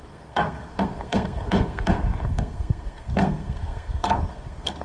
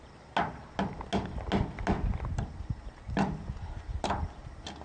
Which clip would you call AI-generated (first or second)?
first